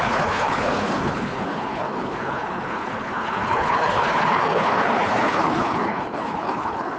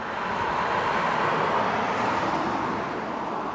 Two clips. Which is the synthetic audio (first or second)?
first